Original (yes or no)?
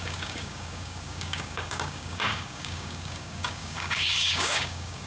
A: no